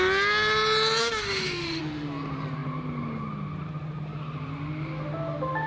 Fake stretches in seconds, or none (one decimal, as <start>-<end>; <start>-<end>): 1.0-1.8